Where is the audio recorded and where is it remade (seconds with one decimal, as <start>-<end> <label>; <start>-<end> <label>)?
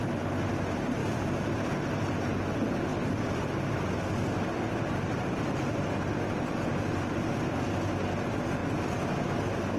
0.0-1.0 recorded; 1.0-1.5 remade; 1.5-2.9 recorded; 2.9-7.6 remade; 7.6-9.8 recorded